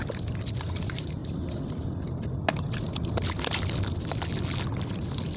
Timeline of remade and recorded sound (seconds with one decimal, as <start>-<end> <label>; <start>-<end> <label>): 0.0-5.4 recorded